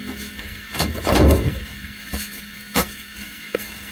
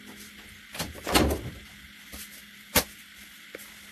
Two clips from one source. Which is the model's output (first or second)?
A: first